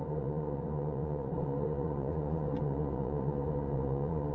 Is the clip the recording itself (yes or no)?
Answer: no